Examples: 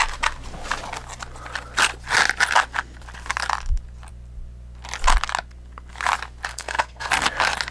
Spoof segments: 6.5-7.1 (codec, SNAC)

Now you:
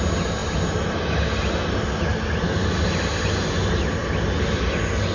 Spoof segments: none

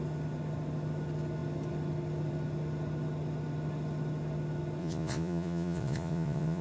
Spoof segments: 4.8-6.6 (vocoder, Vocos)

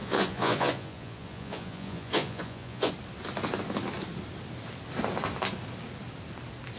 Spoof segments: 0.0-2.9 (vocoder, Vocos)